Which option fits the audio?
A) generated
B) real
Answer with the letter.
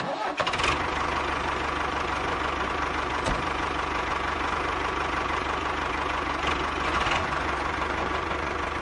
A